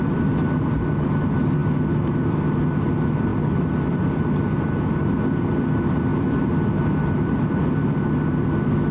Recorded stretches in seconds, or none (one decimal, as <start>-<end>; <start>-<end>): 0.0-3.3; 4.1-8.9